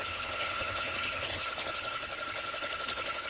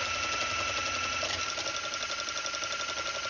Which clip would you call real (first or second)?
second